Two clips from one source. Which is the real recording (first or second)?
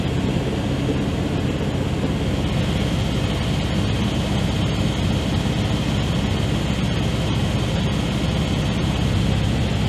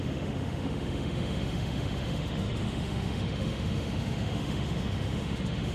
first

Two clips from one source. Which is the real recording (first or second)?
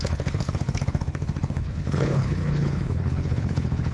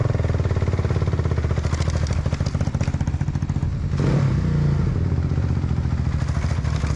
second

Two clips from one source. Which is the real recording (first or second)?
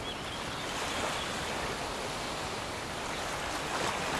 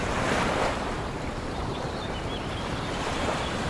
first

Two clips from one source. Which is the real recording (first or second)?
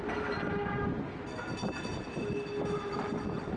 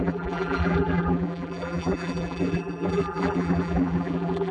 first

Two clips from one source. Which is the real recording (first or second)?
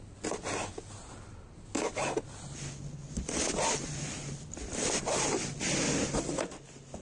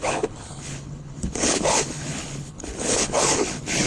first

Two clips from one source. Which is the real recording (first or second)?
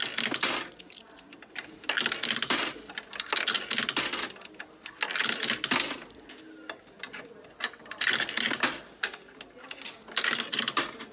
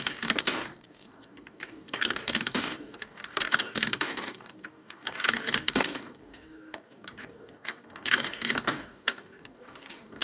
first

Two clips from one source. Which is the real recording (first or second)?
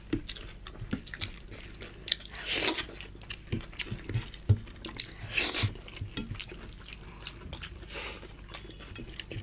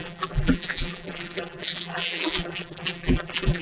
first